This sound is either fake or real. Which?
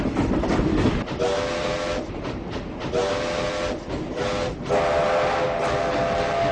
real